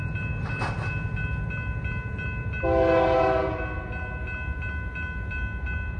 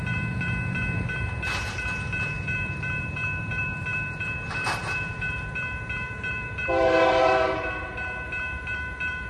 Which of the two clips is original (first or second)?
first